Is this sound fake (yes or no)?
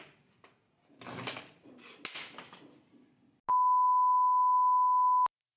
no